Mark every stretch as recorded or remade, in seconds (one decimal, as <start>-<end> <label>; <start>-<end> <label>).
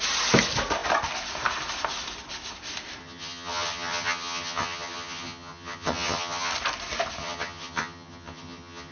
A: 0.0-3.0 recorded; 3.0-6.5 remade; 6.5-7.2 recorded; 7.2-8.9 remade